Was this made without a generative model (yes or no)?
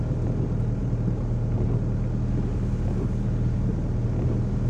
yes